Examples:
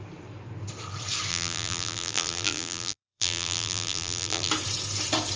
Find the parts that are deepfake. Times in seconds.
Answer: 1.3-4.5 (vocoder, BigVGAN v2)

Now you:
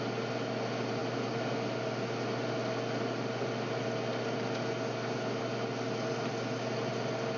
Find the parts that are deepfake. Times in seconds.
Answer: none